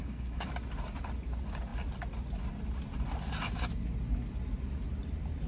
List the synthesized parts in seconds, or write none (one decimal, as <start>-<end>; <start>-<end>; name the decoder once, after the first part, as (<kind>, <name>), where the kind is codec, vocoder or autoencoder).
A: 0.0-0.5 (codec, SNAC)